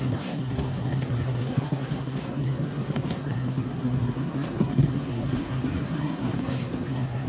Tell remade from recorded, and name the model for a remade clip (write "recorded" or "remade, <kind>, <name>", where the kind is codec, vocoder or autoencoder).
remade, codec, SNAC